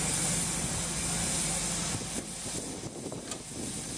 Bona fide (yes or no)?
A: yes